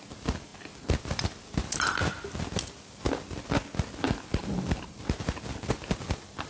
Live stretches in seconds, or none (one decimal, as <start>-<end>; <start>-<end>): 0.0-6.5